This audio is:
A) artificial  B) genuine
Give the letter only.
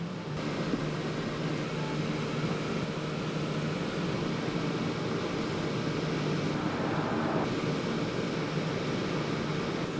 B